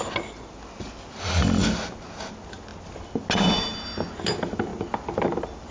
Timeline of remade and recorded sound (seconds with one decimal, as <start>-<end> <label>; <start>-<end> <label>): 0.0-5.7 recorded

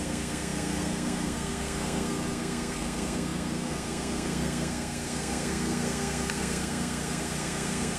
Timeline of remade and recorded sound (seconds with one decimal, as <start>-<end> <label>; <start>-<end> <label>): 0.0-8.0 remade

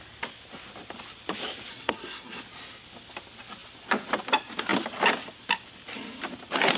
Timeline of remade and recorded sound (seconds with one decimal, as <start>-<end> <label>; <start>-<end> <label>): 0.0-1.7 recorded; 1.7-2.4 remade; 2.4-6.8 recorded

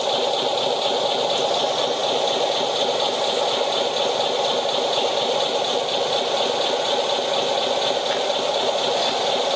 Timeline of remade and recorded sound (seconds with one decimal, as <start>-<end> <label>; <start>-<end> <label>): 0.0-9.6 recorded

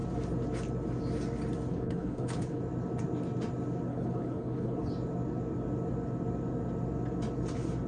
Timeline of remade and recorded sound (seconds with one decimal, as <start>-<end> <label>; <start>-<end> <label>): 0.0-1.7 recorded; 1.7-2.6 remade; 2.6-3.9 recorded; 3.9-4.9 remade; 4.9-7.9 recorded

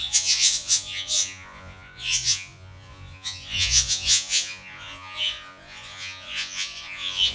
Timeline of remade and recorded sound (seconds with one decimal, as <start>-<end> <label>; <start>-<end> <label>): 0.0-7.3 remade

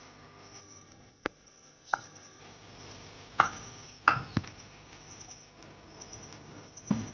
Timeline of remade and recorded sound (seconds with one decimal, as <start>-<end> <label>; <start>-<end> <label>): 0.0-0.6 recorded; 0.6-2.4 remade; 2.4-7.1 recorded